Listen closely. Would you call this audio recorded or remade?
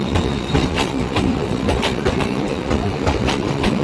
remade